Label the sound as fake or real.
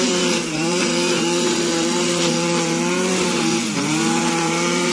fake